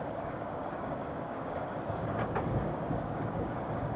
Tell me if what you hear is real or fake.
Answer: fake